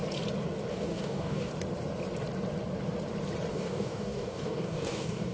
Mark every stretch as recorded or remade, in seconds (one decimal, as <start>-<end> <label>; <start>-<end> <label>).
0.0-0.7 recorded; 0.7-1.5 remade; 1.5-3.5 recorded; 3.5-5.3 remade

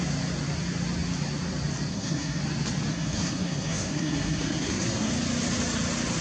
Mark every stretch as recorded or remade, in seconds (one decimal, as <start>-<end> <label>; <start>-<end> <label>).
0.0-1.9 recorded; 1.9-2.4 remade; 2.4-2.9 recorded; 2.9-5.1 remade; 5.1-6.2 recorded

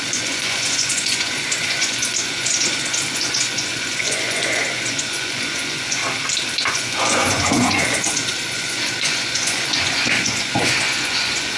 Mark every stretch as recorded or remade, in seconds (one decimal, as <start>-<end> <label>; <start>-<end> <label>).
0.0-6.0 remade; 6.0-6.7 recorded; 6.7-11.6 remade

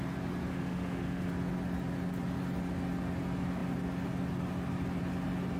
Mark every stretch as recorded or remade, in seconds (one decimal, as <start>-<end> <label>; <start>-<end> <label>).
0.0-0.5 recorded; 0.5-1.3 remade; 1.3-5.6 recorded

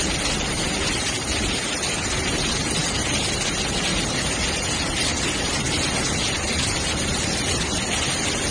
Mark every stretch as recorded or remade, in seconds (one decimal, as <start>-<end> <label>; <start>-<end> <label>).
0.0-8.5 recorded

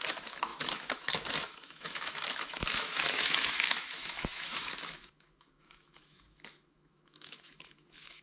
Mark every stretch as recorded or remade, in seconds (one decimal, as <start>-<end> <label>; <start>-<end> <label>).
0.0-8.2 remade

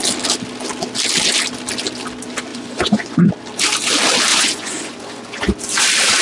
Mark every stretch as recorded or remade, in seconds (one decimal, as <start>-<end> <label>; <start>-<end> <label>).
0.0-2.5 recorded; 2.5-3.3 remade; 3.3-4.3 recorded; 4.3-5.4 remade; 5.4-6.2 recorded